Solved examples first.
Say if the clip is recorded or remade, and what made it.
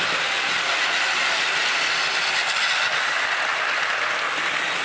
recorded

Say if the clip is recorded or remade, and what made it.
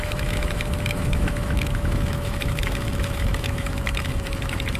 remade, autoencoder, DAC-VAE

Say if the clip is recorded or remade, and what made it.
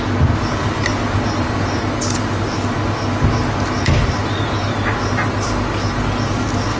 recorded